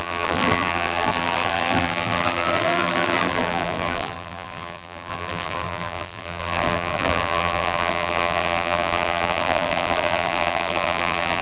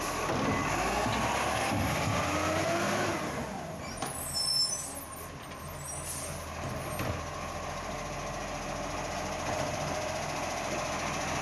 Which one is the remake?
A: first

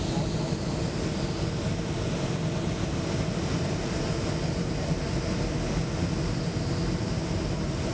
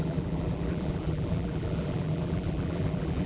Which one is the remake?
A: second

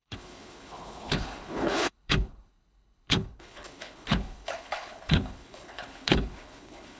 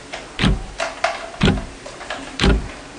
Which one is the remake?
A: first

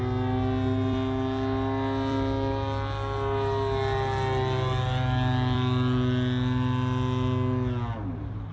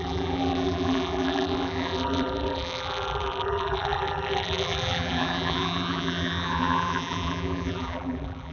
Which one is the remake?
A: second